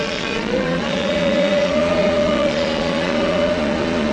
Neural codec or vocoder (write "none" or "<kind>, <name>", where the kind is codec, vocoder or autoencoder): vocoder, Vocos